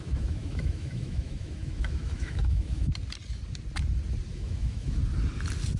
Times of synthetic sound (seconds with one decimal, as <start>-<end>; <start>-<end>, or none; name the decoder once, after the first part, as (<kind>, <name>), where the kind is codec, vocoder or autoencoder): 0.0-2.9 (autoencoder, DAC-VAE); 4.3-5.0